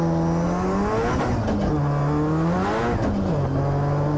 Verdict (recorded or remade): recorded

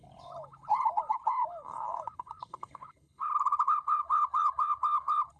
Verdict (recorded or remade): remade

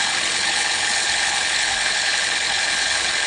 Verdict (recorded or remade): remade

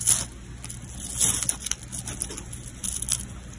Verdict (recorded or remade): recorded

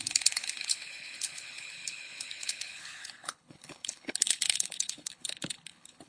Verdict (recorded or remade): remade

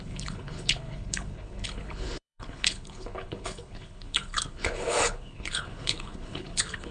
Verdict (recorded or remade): remade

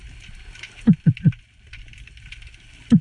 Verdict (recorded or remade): recorded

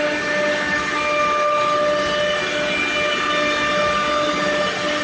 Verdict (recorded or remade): recorded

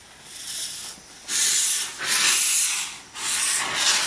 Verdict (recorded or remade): recorded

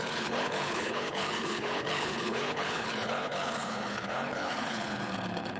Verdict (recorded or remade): remade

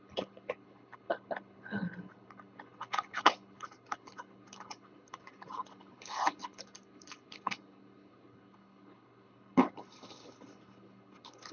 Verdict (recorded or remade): remade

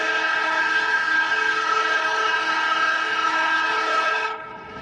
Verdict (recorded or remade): remade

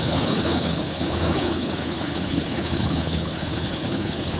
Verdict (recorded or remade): remade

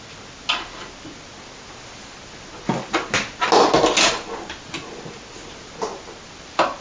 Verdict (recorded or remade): recorded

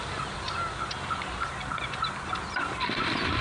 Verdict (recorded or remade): recorded